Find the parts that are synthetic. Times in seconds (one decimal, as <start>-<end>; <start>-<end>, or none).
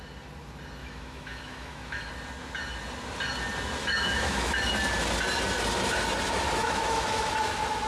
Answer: 0.8-2.1; 3.8-4.7; 6.6-7.3